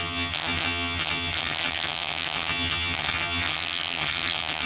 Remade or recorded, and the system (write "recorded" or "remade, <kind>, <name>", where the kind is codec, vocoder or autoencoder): remade, vocoder, HiFi-GAN